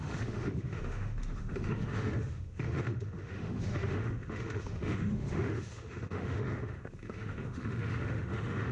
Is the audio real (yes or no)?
no